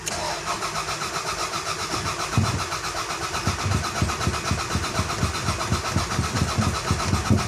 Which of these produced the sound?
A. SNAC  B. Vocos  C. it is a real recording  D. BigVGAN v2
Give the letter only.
C